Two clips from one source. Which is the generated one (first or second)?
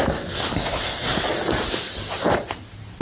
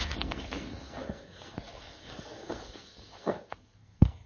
second